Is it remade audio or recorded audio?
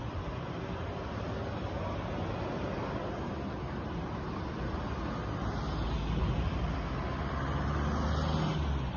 recorded